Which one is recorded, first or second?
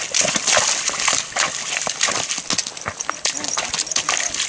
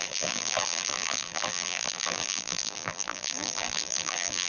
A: first